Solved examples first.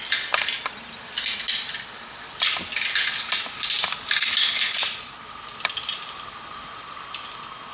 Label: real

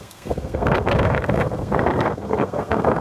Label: fake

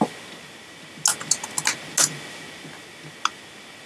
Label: real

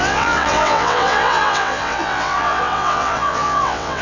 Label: fake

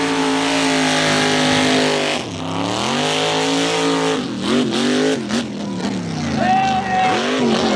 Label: real